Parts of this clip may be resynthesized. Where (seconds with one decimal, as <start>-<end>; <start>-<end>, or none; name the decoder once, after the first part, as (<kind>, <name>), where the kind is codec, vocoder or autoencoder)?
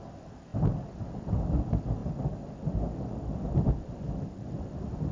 none